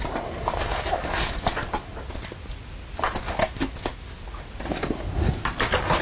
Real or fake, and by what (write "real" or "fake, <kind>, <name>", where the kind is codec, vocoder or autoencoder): real